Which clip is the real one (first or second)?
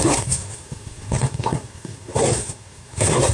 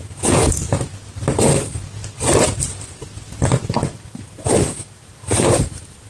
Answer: second